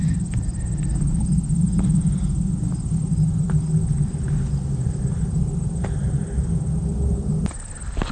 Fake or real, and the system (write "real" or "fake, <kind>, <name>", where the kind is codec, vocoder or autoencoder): real